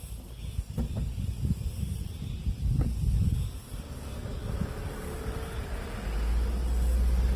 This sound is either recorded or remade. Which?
recorded